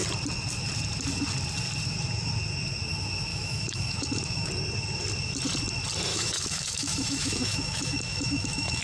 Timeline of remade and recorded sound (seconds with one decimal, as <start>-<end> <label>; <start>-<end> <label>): 0.0-3.3 recorded; 3.3-4.5 remade; 4.5-6.1 recorded; 6.1-8.8 remade